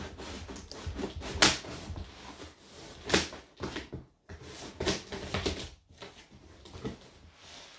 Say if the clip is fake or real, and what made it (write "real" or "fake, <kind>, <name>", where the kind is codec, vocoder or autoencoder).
real